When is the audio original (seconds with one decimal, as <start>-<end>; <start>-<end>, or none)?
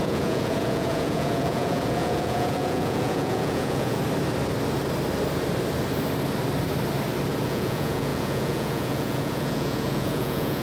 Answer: 4.0-7.4